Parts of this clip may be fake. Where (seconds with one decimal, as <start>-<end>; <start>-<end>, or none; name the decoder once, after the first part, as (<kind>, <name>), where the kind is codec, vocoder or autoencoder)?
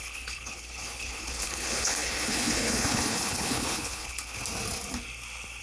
0.0-4.4 (codec, HILCodec)